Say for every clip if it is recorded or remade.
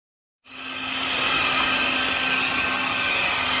recorded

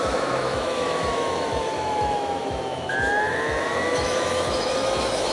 remade